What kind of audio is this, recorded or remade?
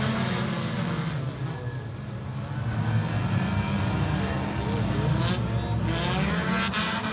recorded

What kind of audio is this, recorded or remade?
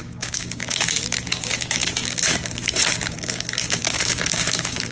remade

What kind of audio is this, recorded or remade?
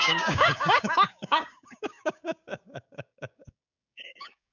remade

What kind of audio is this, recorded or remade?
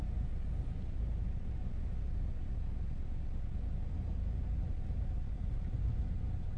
recorded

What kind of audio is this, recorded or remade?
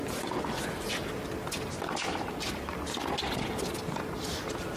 recorded